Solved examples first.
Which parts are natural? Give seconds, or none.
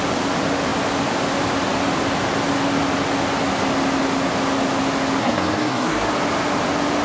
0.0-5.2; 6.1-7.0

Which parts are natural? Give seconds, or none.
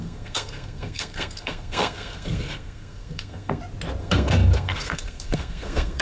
3.6-4.0